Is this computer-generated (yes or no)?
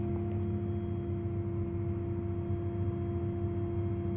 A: no